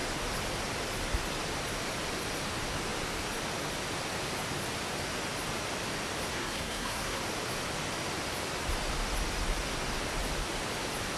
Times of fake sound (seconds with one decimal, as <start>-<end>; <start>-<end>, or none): 6.3-7.2